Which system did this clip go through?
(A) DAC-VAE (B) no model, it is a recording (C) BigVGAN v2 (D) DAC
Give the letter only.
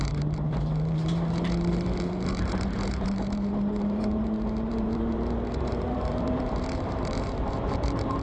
C